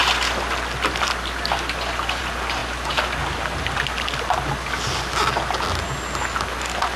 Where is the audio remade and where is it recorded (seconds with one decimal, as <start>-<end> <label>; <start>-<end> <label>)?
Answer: 0.0-7.0 recorded